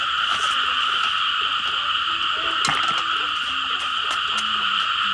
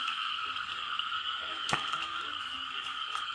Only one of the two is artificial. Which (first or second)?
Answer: second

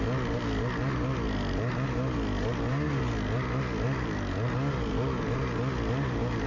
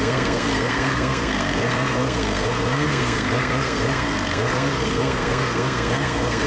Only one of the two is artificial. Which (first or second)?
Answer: second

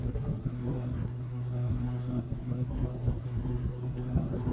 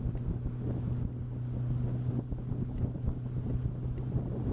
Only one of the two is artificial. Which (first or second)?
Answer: first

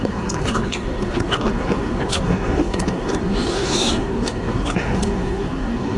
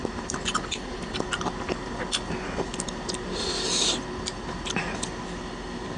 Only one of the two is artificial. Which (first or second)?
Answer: first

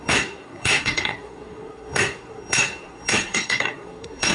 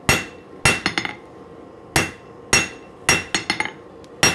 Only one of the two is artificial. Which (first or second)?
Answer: first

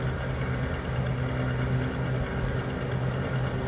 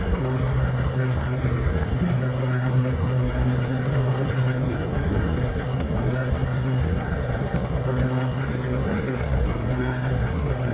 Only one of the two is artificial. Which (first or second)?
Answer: second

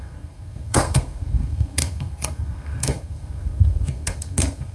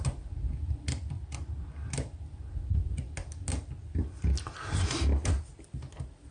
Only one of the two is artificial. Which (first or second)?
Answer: first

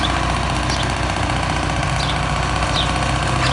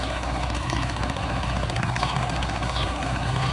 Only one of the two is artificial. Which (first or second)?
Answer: second